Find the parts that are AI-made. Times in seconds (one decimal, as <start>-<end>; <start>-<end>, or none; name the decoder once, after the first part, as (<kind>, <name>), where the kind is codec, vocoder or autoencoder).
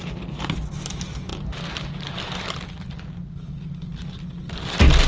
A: none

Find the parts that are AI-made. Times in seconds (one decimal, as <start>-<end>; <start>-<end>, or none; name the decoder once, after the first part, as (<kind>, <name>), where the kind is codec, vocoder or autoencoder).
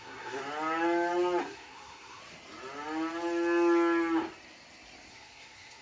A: 0.0-0.4 (codec, SNAC); 1.4-2.2; 5.1-5.8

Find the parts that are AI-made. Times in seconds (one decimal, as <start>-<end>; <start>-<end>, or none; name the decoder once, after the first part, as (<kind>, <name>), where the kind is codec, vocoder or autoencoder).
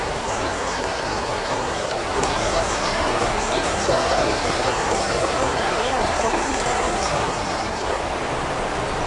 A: 0.0-8.0 (codec, SNAC)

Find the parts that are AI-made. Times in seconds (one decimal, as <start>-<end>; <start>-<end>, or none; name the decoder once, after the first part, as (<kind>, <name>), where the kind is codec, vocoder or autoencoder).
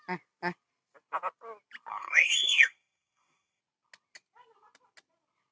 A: 1.9-3.6 (codec, SNAC)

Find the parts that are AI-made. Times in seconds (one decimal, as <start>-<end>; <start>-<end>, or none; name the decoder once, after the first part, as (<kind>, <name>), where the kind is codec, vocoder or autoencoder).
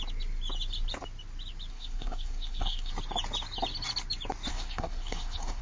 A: 1.7-2.9 (codec, SNAC); 4.5-5.6